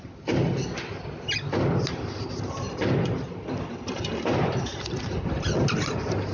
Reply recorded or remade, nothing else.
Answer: recorded